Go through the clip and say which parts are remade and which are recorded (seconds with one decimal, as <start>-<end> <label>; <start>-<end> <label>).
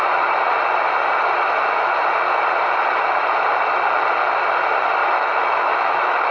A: 0.0-5.0 recorded; 5.0-6.3 remade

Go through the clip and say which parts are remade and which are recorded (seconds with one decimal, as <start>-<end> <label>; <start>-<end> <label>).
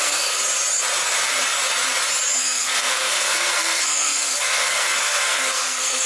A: 0.0-0.4 remade; 0.4-2.4 recorded; 2.4-6.1 remade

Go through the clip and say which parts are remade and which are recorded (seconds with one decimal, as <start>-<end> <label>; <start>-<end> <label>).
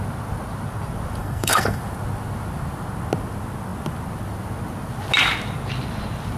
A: 0.0-1.2 recorded; 1.2-1.8 remade; 1.8-6.4 recorded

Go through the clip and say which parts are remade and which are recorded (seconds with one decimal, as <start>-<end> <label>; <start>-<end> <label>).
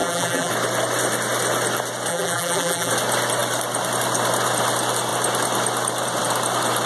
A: 0.0-0.5 remade; 0.5-2.1 recorded; 2.1-2.9 remade; 2.9-6.9 recorded